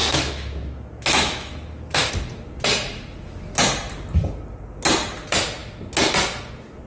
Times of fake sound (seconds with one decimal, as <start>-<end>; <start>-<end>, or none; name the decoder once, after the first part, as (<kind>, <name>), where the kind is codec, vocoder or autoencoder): 0.0-2.1 (autoencoder, DAC-VAE)